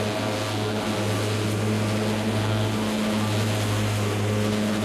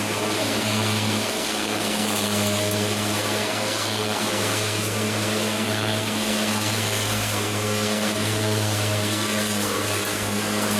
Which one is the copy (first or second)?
second